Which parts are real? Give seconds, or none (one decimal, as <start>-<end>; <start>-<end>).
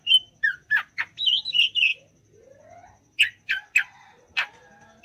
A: 0.0-5.0